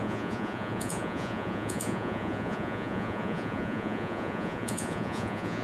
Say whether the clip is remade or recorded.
remade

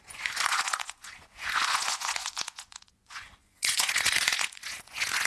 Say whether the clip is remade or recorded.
remade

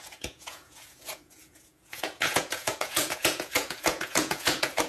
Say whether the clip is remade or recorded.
remade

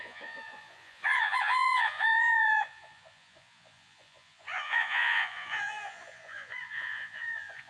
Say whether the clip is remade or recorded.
remade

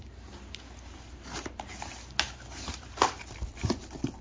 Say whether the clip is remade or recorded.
recorded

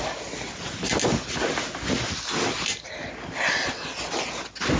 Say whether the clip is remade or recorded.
recorded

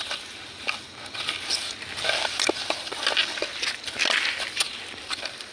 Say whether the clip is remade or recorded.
recorded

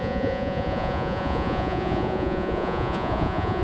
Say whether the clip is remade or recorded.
remade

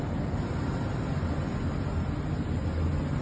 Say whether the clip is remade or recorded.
recorded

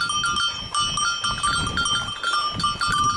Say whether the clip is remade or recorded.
recorded